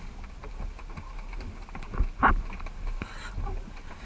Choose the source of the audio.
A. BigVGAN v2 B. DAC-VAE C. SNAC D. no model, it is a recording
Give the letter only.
D